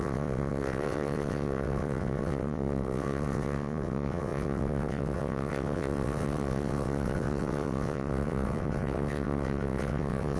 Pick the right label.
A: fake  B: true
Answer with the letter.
A